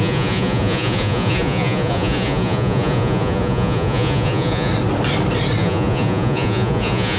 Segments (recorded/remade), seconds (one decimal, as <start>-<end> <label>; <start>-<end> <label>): 0.0-4.7 remade; 4.7-5.6 recorded; 5.6-7.2 remade